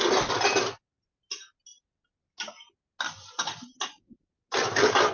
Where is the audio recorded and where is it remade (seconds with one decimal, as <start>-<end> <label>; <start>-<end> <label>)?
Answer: 0.0-5.1 recorded